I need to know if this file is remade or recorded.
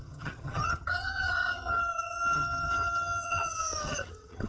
remade